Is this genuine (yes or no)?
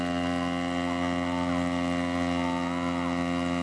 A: yes